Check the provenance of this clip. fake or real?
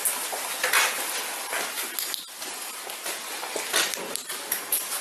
real